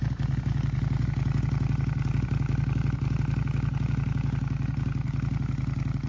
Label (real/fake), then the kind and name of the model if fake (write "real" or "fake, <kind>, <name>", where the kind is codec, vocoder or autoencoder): real